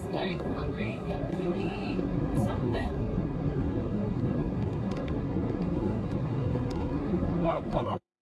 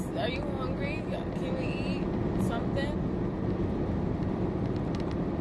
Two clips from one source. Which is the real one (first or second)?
second